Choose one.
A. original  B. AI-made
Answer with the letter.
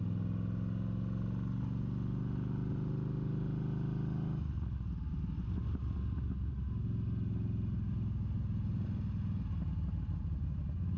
A